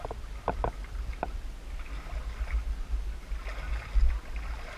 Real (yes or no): yes